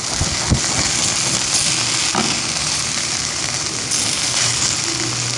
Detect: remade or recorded recorded